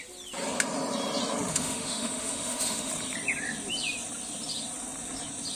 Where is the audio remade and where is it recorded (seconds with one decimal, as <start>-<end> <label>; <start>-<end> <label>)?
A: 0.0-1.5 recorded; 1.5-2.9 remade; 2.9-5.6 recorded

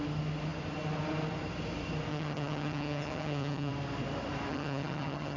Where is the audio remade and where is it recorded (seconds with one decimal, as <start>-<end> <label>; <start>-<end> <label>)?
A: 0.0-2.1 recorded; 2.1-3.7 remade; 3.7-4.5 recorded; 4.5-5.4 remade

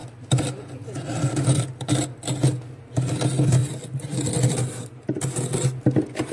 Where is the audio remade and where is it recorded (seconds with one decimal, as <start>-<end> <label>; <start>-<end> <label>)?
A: 0.0-3.6 recorded; 3.6-4.3 remade; 4.3-6.3 recorded

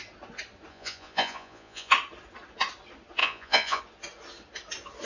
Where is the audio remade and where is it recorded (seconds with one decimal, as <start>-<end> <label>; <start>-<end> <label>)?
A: 0.0-0.7 recorded; 0.7-1.9 remade; 1.9-3.2 recorded; 3.2-3.8 remade; 3.8-5.1 recorded

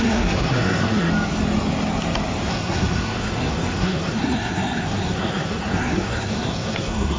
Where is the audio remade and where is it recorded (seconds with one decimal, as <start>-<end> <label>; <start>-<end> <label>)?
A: 0.0-1.1 remade; 1.1-2.5 recorded; 2.5-7.2 remade

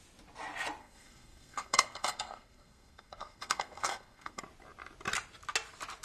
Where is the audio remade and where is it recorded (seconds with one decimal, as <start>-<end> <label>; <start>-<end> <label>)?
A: 0.0-0.8 recorded; 0.8-4.4 remade; 4.4-6.0 recorded

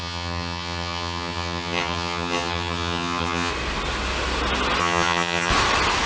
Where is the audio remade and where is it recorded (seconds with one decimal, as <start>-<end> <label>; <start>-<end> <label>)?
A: 0.0-3.5 remade; 3.5-4.8 recorded; 4.8-5.5 remade; 5.5-6.1 recorded

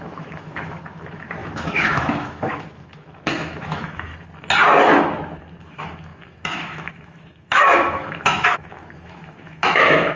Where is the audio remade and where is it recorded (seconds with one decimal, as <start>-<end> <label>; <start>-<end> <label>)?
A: 0.0-4.1 remade; 4.1-5.6 recorded; 5.6-10.2 remade